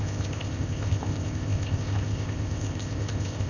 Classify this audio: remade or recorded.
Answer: remade